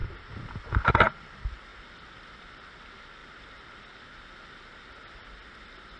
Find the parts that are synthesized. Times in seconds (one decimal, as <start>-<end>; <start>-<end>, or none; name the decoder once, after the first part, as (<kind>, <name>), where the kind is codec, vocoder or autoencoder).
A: none